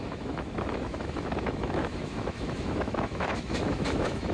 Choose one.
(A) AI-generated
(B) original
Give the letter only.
A